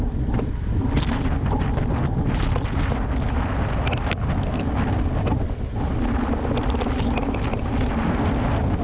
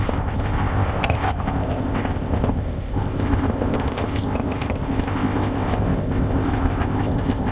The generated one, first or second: second